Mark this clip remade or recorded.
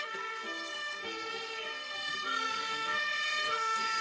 remade